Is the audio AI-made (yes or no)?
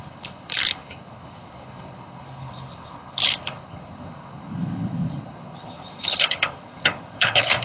yes